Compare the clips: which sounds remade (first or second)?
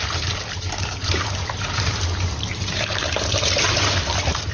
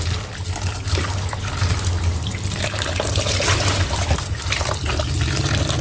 first